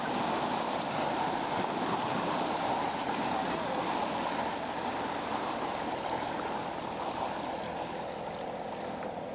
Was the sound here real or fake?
real